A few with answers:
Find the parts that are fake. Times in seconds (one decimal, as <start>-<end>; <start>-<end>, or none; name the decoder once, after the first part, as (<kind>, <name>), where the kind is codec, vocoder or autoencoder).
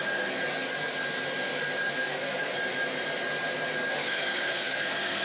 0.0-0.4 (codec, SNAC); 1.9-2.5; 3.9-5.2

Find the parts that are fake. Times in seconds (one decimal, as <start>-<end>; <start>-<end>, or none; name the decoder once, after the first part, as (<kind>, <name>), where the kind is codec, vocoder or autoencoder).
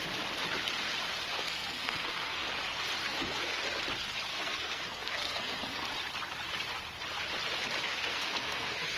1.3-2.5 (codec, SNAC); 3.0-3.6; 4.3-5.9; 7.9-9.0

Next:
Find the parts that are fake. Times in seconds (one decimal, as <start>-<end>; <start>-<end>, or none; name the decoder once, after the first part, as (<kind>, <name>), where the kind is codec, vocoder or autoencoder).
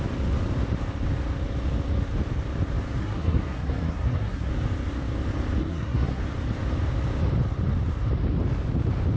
3.0-4.5 (codec, SNAC); 5.6-6.2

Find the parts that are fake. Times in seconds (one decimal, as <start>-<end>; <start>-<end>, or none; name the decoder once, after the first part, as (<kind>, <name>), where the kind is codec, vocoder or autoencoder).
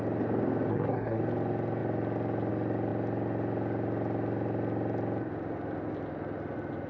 0.7-1.2 (codec, SNAC)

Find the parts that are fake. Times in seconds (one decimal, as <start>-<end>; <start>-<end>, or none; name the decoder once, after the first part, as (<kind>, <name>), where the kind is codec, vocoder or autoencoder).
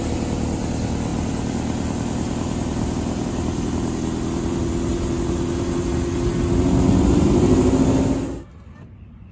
none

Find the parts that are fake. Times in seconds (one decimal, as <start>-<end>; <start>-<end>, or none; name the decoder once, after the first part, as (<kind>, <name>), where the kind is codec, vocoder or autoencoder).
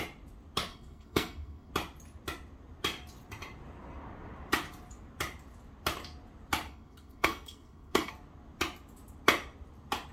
0.7-1.7 (codec, SNAC); 6.7-8.1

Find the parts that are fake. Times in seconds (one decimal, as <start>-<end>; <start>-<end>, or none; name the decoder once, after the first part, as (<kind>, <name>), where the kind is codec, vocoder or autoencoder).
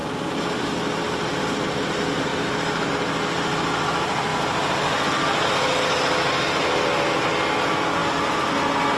none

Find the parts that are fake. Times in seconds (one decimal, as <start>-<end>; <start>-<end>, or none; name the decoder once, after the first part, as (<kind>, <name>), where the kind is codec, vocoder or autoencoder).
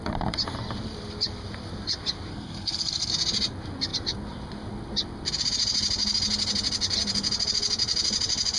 2.3-3.1 (codec, SNAC)